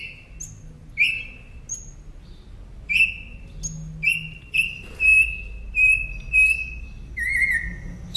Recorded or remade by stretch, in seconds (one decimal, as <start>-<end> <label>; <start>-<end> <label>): 0.0-8.2 recorded